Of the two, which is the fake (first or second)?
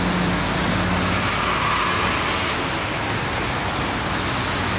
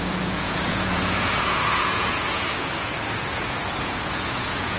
second